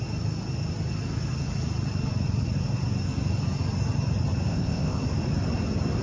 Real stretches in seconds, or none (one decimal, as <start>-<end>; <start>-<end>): 0.0-4.5; 5.0-6.0